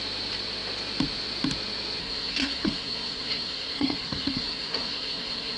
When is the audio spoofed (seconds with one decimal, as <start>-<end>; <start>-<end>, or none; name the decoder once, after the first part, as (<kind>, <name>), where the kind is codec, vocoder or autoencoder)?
2.0-5.6 (codec, SNAC)